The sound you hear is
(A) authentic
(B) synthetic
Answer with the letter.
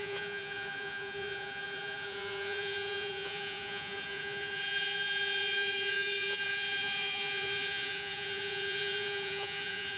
B